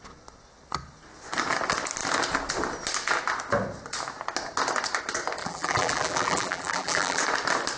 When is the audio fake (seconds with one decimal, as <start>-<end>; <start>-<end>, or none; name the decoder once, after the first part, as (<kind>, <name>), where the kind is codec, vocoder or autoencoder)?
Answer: 5.4-7.2 (vocoder, BigVGAN v2)